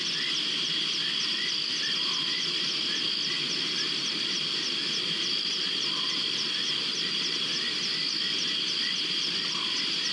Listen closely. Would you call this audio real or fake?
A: real